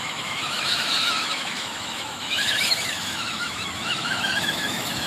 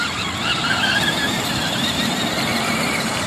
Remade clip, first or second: first